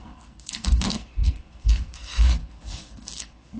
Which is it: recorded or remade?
remade